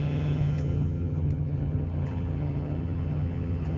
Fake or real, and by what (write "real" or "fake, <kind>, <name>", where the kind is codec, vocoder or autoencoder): fake, vocoder, HiFi-GAN